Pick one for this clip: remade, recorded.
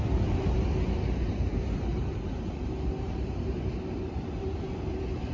recorded